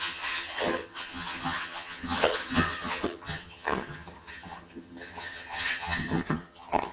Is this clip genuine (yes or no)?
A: no